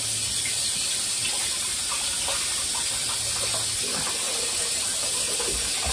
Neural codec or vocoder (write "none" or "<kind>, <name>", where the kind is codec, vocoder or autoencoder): none